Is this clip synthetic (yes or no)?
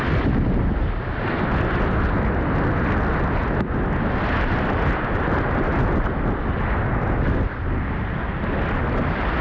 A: no